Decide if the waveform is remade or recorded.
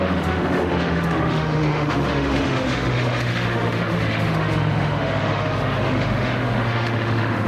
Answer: remade